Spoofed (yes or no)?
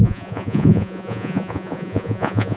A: yes